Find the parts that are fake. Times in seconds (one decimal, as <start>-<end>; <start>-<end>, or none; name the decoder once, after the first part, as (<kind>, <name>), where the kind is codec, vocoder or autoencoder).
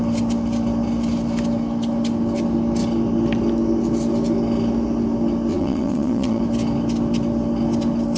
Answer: 5.5-6.4 (vocoder, Vocos)